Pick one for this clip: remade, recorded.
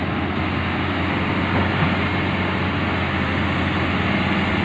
recorded